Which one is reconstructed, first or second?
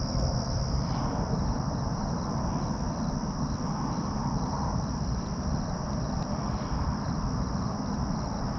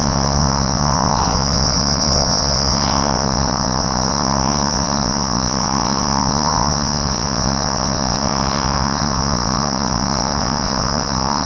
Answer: second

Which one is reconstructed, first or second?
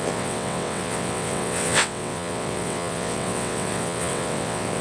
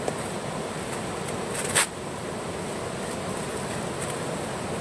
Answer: first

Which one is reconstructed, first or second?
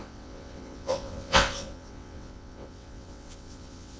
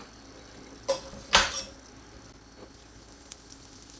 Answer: first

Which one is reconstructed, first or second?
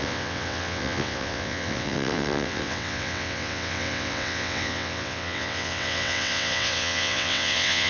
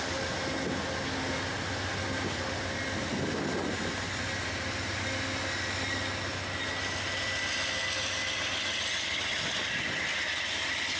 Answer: first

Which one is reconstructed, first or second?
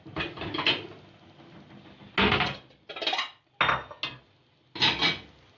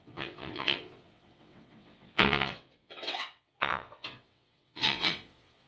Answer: second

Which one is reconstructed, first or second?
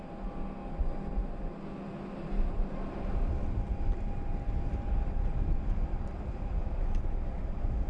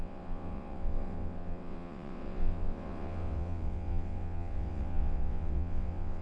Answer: second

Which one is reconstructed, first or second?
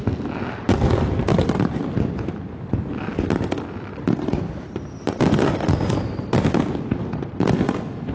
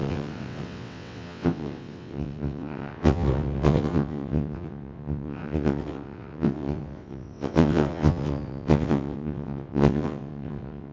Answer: second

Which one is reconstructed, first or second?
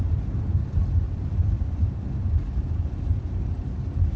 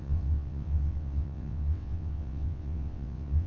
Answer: second